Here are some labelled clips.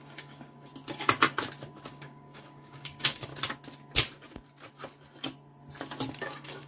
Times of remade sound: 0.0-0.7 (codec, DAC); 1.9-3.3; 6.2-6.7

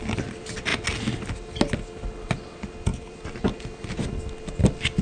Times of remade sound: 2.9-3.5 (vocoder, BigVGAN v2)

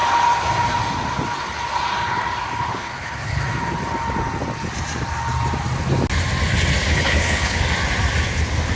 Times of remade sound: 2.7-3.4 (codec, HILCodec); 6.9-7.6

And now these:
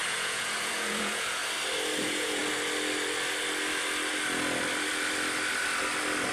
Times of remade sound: 0.0-1.4 (vocoder, Vocos); 2.0-2.4